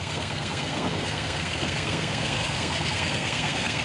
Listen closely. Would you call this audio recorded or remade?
remade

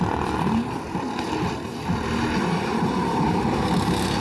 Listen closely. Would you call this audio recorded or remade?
recorded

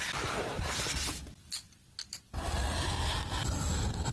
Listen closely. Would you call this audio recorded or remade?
recorded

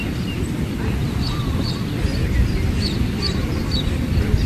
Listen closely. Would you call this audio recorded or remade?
recorded